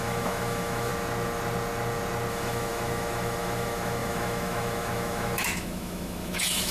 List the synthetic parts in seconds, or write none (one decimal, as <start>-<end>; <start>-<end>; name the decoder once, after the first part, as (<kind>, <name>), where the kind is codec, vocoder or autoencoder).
0.0-0.9 (autoencoder, DAC-VAE); 2.3-6.7